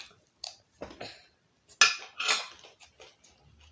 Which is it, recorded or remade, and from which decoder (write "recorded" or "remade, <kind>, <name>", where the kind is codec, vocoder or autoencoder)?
recorded